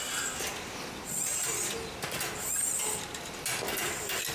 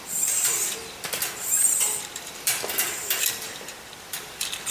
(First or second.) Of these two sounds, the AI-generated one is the second